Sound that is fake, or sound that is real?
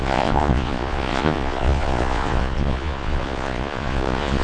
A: fake